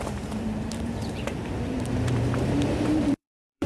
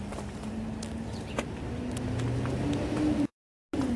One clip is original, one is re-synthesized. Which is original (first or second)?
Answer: second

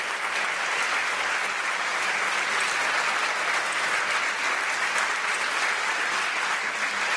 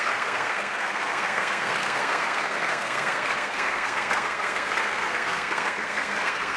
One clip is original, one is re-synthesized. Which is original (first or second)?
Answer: first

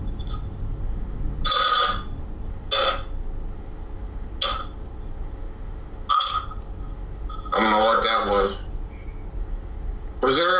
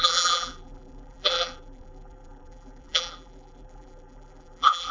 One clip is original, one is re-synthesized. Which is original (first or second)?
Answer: first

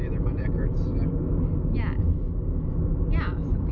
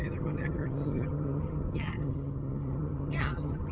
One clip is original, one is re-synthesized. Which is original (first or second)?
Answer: first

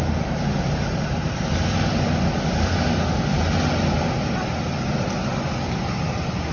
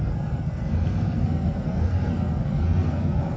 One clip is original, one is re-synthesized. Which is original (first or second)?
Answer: first